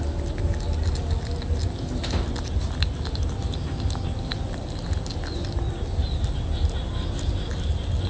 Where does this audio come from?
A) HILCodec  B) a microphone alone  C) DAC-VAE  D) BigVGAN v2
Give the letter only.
B